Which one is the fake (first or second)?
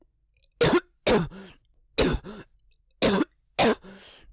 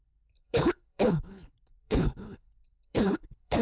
second